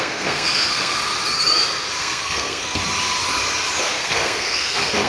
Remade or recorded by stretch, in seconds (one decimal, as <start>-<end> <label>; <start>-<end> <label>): 0.0-1.0 remade; 1.0-2.0 recorded; 2.0-2.8 remade; 2.8-3.8 recorded; 3.8-5.1 remade